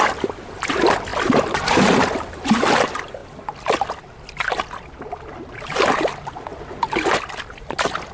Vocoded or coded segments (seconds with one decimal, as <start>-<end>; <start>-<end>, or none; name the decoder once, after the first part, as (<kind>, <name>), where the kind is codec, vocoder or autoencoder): none